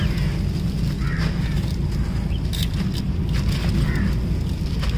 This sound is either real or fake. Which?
real